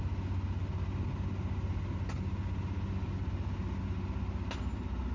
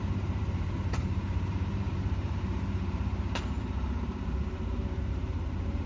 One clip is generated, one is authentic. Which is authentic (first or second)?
first